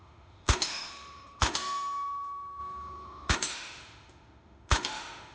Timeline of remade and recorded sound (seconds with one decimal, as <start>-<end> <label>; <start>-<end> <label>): 0.0-5.3 remade